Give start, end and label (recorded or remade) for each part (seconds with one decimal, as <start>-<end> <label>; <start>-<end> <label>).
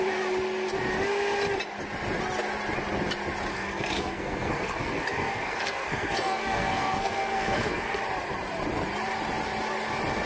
0.0-3.5 recorded; 3.5-8.0 remade; 8.0-10.3 recorded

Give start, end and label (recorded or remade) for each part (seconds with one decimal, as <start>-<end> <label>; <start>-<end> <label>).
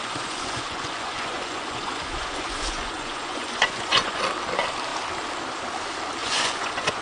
0.0-4.2 remade; 4.2-6.2 recorded; 6.2-7.0 remade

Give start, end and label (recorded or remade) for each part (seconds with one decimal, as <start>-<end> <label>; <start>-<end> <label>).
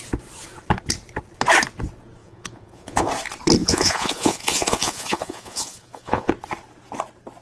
0.0-2.2 recorded; 2.2-3.1 remade; 3.1-3.6 recorded; 3.6-6.3 remade; 6.3-7.4 recorded